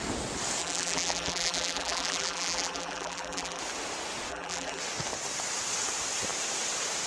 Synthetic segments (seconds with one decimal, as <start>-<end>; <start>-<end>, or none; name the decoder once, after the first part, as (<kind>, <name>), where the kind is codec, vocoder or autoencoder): 0.6-3.6 (vocoder, BigVGAN v2); 4.3-4.8